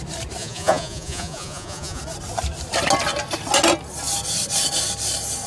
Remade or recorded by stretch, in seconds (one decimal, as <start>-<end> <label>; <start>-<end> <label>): 0.0-0.4 recorded; 0.4-2.0 remade; 2.0-5.5 recorded